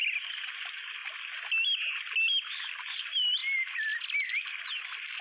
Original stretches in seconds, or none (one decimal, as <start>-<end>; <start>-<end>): 0.0-5.2

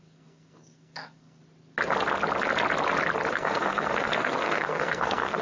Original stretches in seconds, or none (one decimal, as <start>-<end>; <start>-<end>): 1.4-3.3

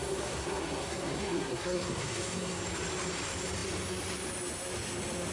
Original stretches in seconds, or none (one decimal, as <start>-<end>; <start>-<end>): 2.6-5.3

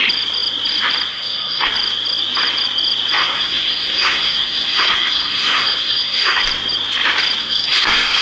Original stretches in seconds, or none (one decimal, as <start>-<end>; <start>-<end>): 0.0-1.1; 1.7-3.2; 6.4-7.4

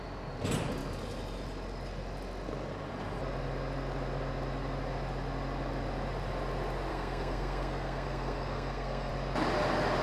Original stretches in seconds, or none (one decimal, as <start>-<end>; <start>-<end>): 0.0-6.9; 9.1-10.0

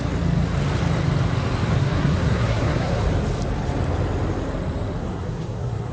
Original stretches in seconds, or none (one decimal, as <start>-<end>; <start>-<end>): 0.0-1.8; 3.0-5.0

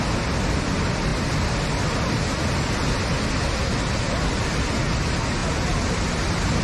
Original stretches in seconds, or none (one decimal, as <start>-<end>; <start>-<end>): 0.0-6.6